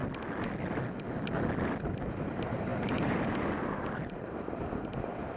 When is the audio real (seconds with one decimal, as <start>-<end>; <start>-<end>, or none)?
0.0-2.1